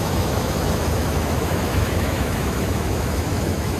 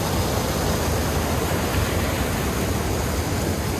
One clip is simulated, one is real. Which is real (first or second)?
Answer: second